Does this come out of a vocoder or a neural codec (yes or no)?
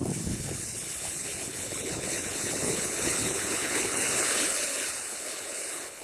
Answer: yes